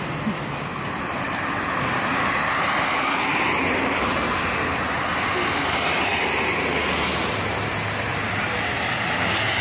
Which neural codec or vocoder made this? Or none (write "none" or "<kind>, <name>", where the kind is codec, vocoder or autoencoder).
none